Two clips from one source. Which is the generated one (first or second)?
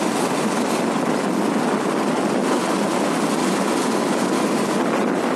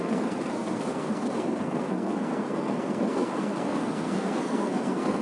second